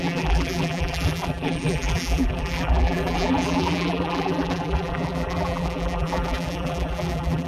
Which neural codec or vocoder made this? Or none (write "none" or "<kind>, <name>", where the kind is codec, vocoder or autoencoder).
vocoder, BigVGAN v2